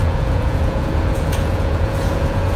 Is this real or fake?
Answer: fake